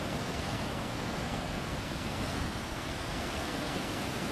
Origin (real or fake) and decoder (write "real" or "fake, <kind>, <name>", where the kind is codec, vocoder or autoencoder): fake, codec, SNAC